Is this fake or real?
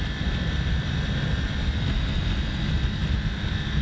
real